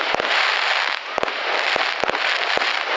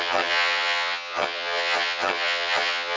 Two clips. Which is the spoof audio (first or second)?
second